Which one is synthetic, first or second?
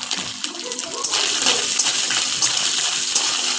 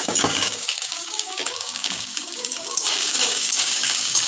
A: second